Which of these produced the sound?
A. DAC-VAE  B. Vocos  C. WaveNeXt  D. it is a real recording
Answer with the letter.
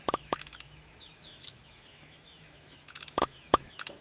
A